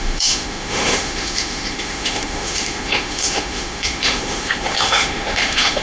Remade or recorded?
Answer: remade